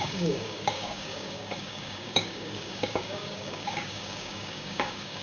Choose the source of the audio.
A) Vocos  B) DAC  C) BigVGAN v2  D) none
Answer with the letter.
B